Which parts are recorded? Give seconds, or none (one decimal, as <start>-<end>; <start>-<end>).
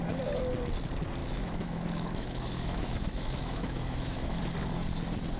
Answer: 0.0-1.2; 4.4-5.4